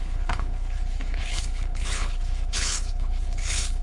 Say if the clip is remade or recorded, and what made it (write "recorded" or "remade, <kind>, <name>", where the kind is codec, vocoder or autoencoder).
remade, codec, HILCodec